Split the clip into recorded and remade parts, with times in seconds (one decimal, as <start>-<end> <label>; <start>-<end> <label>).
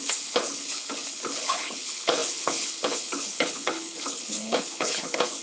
0.0-5.4 remade